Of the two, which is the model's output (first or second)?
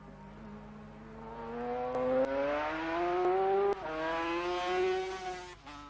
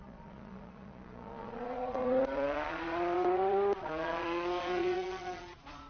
second